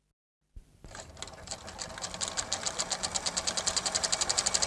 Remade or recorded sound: recorded